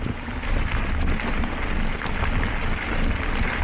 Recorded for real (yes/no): yes